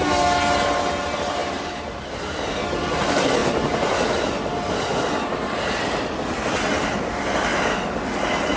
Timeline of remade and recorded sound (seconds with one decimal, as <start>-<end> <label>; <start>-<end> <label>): 0.0-1.4 recorded; 1.4-2.9 remade; 2.9-8.6 recorded

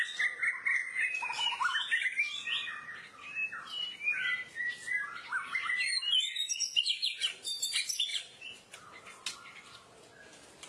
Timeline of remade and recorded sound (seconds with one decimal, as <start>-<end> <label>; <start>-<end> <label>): 0.0-6.7 recorded; 6.7-7.7 remade; 7.7-8.1 recorded; 8.1-8.9 remade; 8.9-10.7 recorded

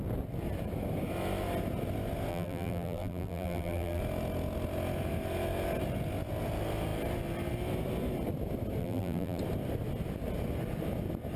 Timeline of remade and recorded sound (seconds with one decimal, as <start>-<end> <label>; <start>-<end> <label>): 0.0-2.3 recorded; 2.3-4.0 remade; 4.0-8.8 recorded; 8.8-9.4 remade; 9.4-11.4 recorded

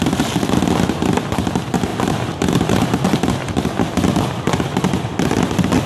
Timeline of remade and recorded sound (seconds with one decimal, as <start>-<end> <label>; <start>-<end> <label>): 0.0-1.9 recorded; 1.9-5.4 remade; 5.4-5.9 recorded

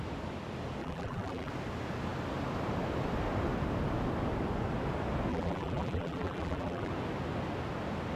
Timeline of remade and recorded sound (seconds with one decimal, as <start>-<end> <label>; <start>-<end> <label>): 0.0-0.8 recorded; 0.8-1.5 remade; 1.5-5.3 recorded; 5.3-6.9 remade; 6.9-8.2 recorded